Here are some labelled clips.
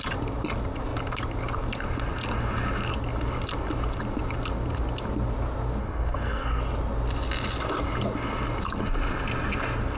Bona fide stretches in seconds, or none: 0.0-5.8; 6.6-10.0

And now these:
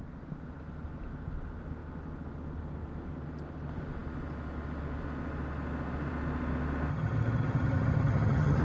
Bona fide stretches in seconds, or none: 0.0-6.9

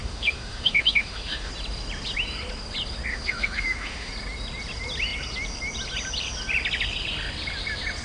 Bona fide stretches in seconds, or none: 1.5-3.1; 4.1-8.0

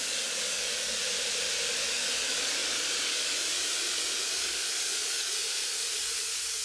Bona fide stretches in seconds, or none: 1.0-1.7

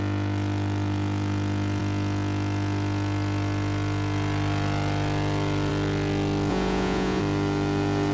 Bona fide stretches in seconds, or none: 0.0-6.5; 7.2-8.1

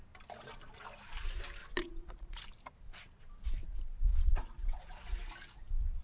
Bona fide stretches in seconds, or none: 0.0-1.6; 2.4-4.1; 5.2-6.0

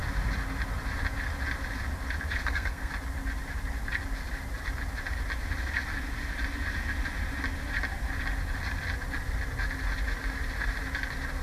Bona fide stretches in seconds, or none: 0.0-2.4; 2.9-11.4

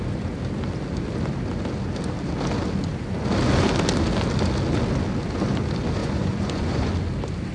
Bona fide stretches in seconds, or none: 0.0-6.0; 6.9-7.5